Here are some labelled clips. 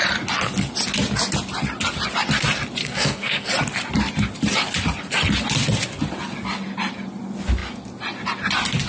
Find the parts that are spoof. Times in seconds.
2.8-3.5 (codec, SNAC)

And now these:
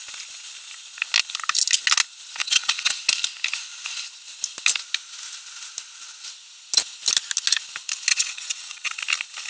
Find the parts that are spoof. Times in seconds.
2.4-3.0 (vocoder, WaveNeXt); 8.1-8.9

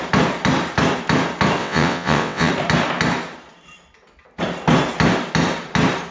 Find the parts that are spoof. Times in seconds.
1.6-2.5 (vocoder, WaveNeXt)

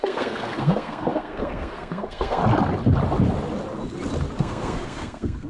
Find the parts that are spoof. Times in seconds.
0.0-2.4 (codec, SNAC); 4.4-5.5

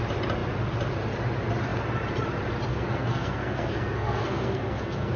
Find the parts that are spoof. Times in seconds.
2.7-5.2 (codec, SNAC)